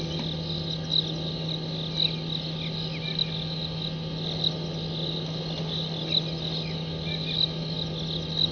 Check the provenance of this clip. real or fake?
real